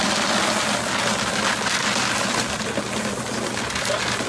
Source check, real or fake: real